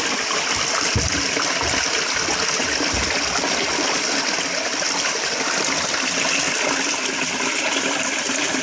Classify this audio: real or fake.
real